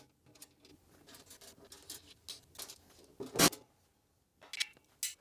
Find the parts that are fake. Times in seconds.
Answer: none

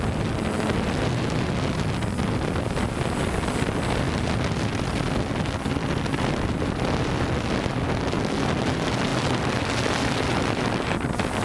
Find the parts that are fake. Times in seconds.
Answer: none

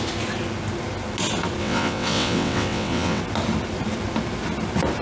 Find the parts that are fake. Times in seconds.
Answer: 1.6-3.2 (vocoder, WaveNeXt)

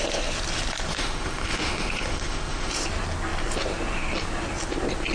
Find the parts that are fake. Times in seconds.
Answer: 0.9-2.7 (autoencoder, DAC-VAE)

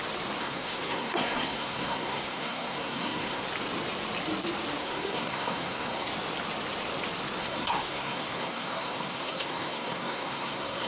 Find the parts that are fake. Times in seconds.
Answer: 0.4-3.4 (codec, SNAC); 4.8-6.1; 7.4-10.9

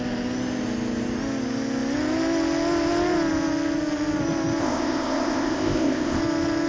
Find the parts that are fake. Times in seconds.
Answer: 4.6-6.2 (codec, ZipCodec)